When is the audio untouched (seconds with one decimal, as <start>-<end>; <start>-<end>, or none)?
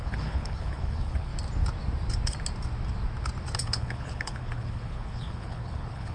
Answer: 1.3-3.6